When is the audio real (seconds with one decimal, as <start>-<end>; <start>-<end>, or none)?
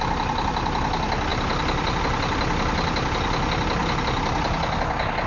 0.0-5.3